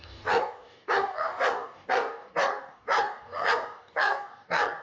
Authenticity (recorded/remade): remade